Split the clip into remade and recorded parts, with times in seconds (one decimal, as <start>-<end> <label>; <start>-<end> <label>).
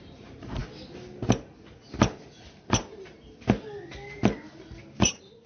0.0-0.6 remade; 0.6-2.4 recorded; 2.4-3.3 remade; 3.3-4.8 recorded; 4.8-5.5 remade